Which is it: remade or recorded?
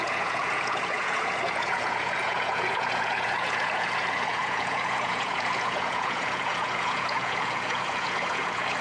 remade